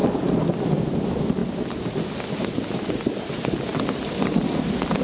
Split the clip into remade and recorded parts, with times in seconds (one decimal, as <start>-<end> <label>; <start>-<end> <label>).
0.0-5.0 recorded